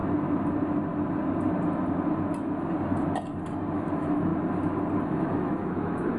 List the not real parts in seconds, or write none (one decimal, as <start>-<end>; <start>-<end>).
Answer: 3.7-4.3; 5.0-6.2